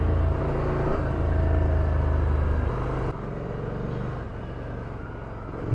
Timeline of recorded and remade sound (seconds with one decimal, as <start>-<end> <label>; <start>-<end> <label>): 0.0-5.7 recorded